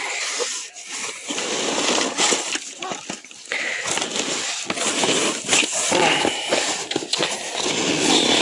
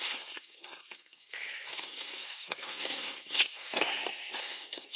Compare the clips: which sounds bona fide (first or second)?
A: first